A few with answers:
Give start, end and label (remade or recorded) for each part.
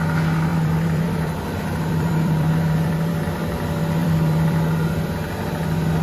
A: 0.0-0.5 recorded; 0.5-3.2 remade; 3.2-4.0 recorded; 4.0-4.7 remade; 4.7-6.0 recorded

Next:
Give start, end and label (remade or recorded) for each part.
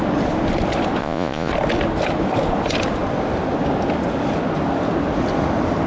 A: 0.0-1.0 recorded; 1.0-1.5 remade; 1.5-5.9 recorded